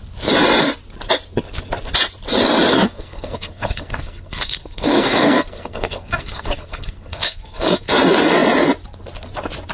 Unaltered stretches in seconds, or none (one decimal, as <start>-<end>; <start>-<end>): 0.0-2.7; 7.9-9.7